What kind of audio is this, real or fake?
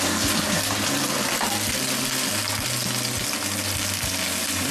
real